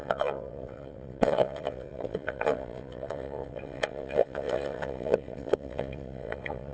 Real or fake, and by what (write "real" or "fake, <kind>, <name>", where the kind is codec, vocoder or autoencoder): fake, vocoder, WaveNeXt